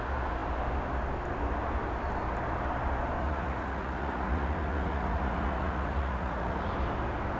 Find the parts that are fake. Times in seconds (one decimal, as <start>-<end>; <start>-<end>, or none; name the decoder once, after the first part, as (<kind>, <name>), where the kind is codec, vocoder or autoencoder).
3.2-6.7 (vocoder, Vocos)